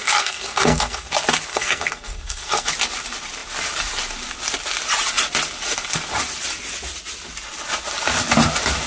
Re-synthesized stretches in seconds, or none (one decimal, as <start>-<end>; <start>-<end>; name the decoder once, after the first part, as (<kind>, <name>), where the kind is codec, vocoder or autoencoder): 0.0-1.1 (codec, SNAC); 1.5-2.7